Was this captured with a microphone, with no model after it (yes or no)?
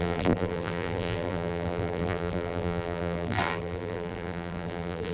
no